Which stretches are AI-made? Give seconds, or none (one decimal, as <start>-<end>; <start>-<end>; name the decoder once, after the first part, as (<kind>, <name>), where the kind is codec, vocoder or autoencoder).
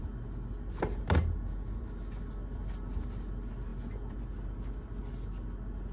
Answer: none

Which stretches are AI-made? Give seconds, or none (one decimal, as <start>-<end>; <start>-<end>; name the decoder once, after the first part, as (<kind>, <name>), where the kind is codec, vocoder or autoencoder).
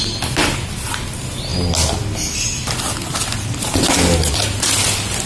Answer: none